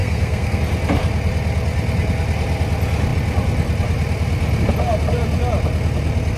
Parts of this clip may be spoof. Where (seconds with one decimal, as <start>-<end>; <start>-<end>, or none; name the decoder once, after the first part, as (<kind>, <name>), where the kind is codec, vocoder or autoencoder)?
0.0-0.6 (codec, SNAC)